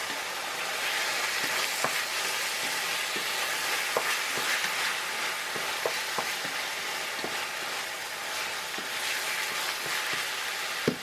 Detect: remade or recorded recorded